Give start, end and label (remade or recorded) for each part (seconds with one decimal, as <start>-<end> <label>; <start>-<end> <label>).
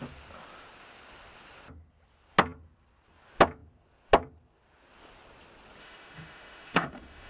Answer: 0.0-5.8 recorded; 5.8-7.3 remade